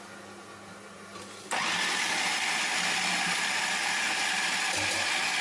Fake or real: real